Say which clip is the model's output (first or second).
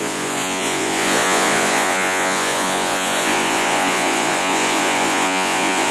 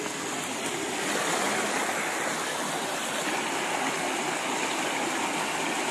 first